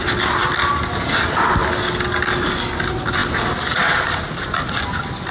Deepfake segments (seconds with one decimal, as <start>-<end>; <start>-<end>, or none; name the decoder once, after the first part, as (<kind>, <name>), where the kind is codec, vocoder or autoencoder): none